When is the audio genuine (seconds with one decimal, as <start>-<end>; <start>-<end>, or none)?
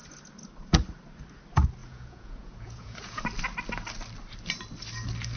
0.0-1.8; 3.2-5.4